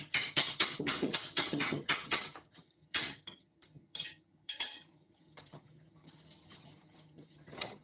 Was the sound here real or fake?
fake